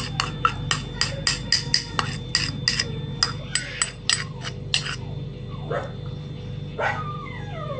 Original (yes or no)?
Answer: yes